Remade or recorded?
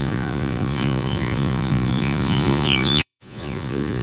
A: remade